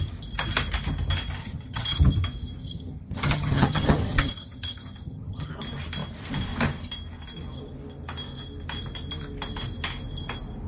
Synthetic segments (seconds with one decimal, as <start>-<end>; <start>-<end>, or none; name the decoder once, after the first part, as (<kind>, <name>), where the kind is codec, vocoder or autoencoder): 1.4-2.0 (vocoder, HiFi-GAN); 2.6-5.5